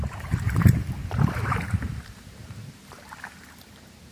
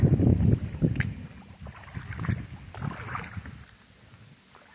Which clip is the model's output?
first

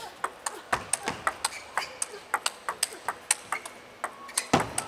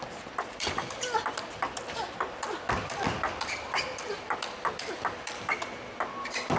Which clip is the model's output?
second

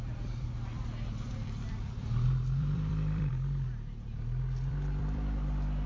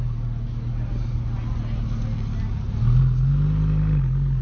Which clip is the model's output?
first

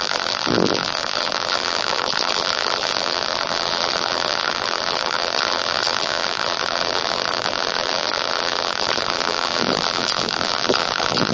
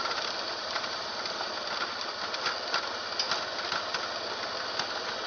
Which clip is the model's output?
first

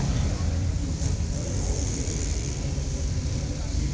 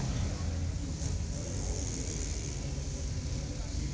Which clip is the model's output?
first